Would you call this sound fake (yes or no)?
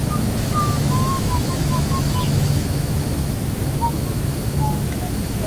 yes